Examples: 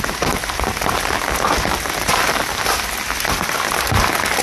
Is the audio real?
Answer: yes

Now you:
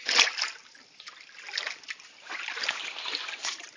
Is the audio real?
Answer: yes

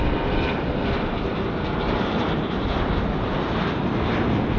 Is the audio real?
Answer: yes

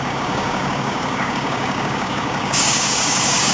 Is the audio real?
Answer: no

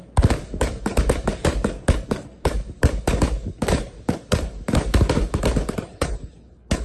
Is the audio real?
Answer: no